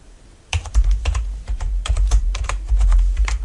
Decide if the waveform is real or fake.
fake